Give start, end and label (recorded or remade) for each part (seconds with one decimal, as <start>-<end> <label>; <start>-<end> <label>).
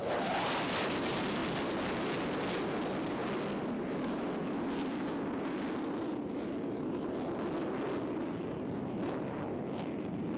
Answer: 0.0-10.4 recorded